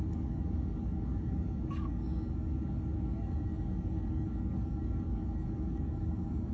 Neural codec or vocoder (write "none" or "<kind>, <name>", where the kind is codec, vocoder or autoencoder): codec, DAC